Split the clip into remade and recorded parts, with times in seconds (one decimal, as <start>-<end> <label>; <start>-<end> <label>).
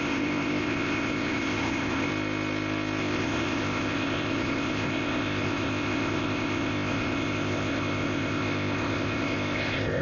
0.0-2.1 remade; 2.1-3.0 recorded; 3.0-10.0 remade